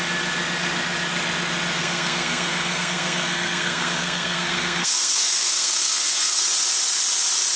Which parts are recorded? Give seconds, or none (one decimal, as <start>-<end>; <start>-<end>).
0.0-1.8; 6.4-7.6